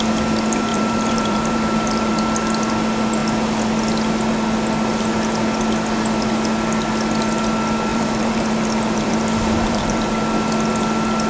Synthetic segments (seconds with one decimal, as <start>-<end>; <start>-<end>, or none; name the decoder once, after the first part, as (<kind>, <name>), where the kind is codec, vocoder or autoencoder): 0.7-2.1 (vocoder, BigVGAN v2); 7.9-10.1